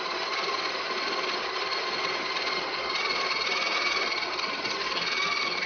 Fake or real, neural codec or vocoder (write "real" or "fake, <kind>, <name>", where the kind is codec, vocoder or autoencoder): real